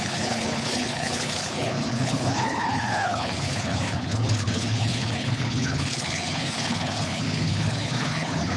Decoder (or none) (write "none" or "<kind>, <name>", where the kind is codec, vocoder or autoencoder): codec, HILCodec